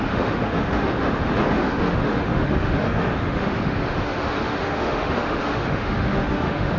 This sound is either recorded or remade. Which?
remade